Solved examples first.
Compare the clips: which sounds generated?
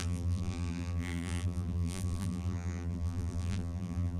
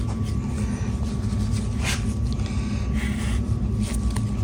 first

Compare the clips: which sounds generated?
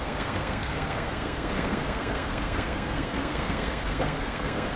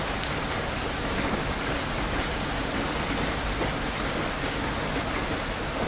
first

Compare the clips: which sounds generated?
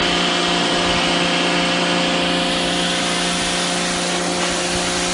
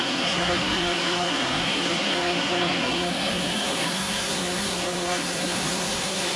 second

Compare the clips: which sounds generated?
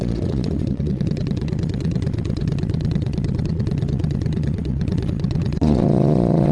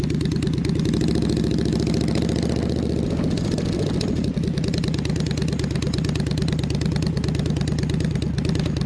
first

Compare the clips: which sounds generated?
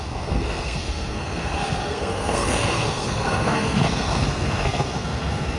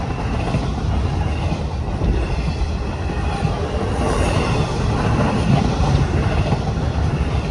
first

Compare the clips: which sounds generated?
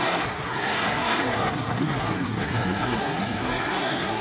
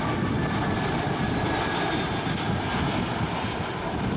first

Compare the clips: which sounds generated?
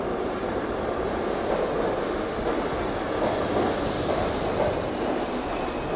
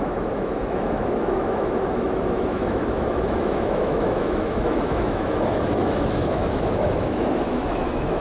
second